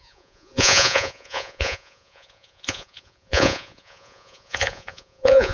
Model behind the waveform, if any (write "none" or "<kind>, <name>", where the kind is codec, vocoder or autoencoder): vocoder, Vocos